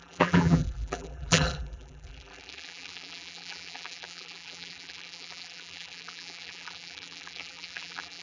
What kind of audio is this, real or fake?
fake